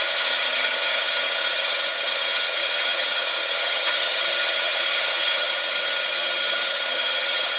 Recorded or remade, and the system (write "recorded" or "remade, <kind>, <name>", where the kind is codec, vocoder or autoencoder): remade, vocoder, HiFi-GAN